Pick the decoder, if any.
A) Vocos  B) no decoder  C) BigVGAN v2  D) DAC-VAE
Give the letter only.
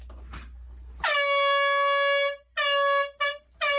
B